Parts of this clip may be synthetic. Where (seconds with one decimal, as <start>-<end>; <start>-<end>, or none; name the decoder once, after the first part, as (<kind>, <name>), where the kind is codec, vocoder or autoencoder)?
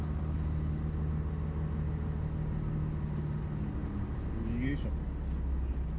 3.8-4.3 (vocoder, BigVGAN v2)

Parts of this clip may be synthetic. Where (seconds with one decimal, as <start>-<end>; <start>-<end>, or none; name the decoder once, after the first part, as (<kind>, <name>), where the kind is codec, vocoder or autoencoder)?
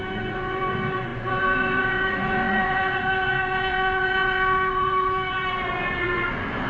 0.0-6.7 (vocoder, Vocos)